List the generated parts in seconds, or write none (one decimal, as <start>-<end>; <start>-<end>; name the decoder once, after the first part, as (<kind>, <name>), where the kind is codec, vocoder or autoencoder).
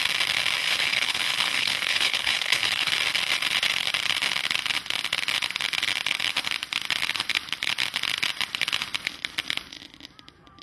0.6-2.9 (codec, HILCodec)